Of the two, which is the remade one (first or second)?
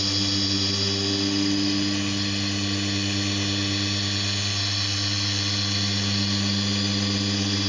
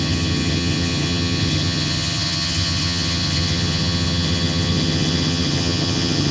second